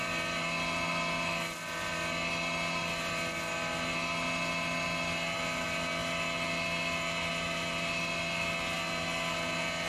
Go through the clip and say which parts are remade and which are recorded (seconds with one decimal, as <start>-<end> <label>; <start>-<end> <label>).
0.0-9.9 recorded